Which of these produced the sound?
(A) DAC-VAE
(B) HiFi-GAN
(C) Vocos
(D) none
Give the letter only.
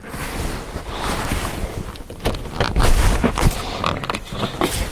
D